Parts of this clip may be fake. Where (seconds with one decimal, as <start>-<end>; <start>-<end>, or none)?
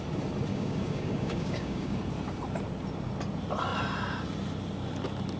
0.5-2.0